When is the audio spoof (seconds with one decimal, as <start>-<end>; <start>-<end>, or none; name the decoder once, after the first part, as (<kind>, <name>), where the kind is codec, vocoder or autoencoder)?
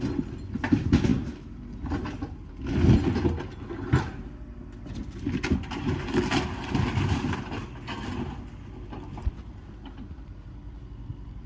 none